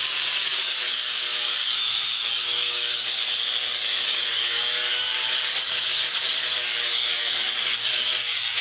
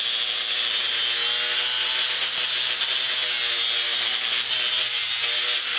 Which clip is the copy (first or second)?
first